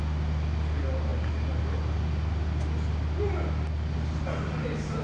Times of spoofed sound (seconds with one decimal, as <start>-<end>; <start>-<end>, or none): none